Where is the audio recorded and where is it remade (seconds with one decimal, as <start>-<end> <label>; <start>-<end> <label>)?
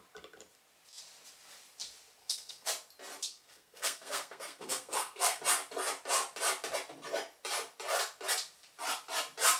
0.0-2.2 recorded; 2.2-2.7 remade; 2.7-3.2 recorded; 3.2-5.4 remade; 5.4-9.6 recorded